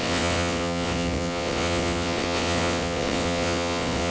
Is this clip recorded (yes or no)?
no